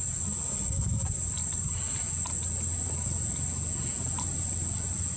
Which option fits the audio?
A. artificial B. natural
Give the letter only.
B